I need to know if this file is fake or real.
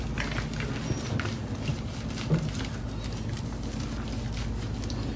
real